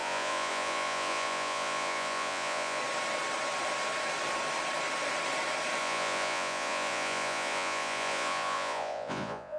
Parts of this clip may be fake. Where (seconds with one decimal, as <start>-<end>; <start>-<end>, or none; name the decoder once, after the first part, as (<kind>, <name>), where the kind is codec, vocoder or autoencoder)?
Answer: 0.0-2.8 (vocoder, Vocos); 5.8-9.6